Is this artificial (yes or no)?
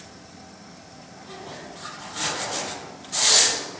yes